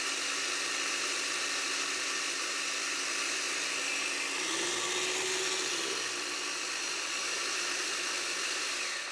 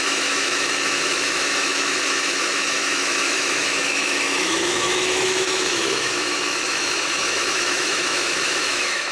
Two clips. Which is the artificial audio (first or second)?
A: second